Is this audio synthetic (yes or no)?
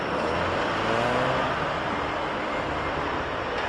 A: no